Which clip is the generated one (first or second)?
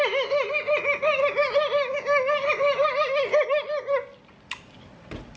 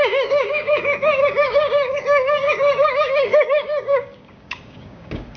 second